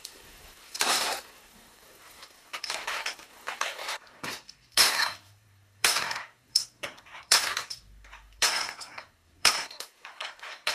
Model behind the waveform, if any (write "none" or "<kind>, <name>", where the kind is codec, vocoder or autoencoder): codec, SNAC